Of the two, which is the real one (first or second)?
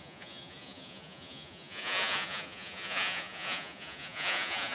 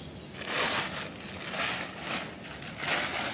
second